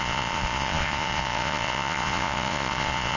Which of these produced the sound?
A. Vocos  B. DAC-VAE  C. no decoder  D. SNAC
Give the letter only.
A